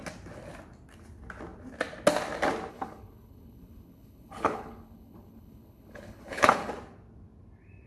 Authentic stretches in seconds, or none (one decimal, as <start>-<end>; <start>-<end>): 0.0-2.7; 6.7-7.9